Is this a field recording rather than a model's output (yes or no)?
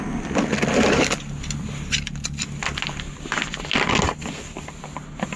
yes